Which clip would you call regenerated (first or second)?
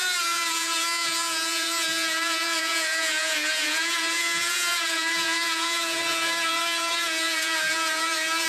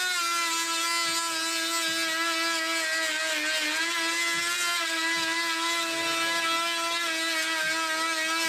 first